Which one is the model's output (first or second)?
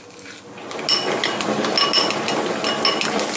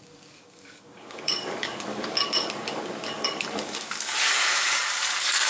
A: second